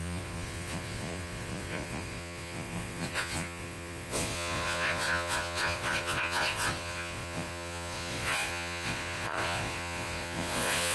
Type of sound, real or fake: fake